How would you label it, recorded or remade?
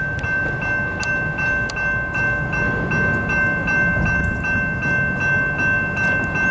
recorded